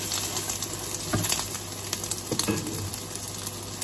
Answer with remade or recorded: recorded